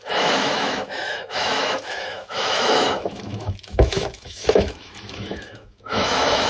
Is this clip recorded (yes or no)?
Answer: no